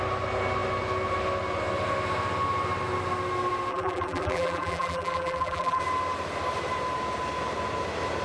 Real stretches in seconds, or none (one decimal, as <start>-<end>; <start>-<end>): 0.0-3.7; 5.8-8.2